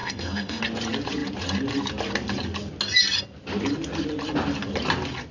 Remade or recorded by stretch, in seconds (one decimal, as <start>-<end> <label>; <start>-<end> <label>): 0.0-0.6 remade; 0.6-5.3 recorded